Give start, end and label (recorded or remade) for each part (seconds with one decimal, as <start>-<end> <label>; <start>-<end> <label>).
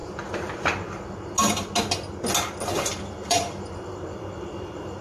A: 0.0-3.0 recorded; 3.0-5.0 remade